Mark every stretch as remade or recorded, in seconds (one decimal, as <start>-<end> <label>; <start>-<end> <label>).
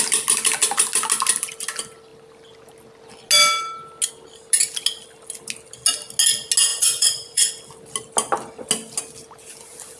0.0-6.7 recorded; 6.7-7.5 remade; 7.5-10.0 recorded